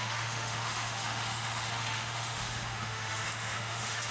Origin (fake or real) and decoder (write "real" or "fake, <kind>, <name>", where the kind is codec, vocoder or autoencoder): fake, autoencoder, DAC-VAE